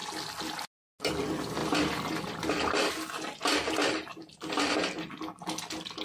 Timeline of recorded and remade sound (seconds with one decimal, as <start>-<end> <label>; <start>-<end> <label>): 0.0-1.6 recorded; 1.6-2.9 remade; 2.9-4.1 recorded; 4.1-4.8 remade; 4.8-6.0 recorded